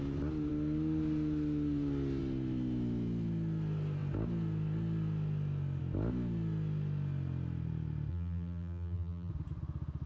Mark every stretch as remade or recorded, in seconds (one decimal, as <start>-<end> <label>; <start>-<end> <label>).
0.0-8.1 recorded; 8.1-9.3 remade; 9.3-10.1 recorded